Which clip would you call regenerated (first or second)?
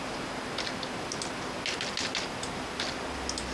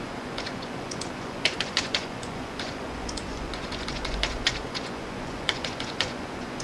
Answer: second